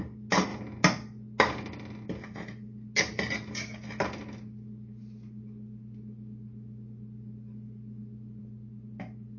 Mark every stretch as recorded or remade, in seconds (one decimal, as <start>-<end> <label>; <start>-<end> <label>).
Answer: 0.0-9.4 recorded